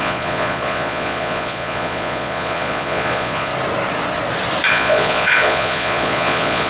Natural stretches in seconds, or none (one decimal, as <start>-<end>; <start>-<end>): 3.5-4.7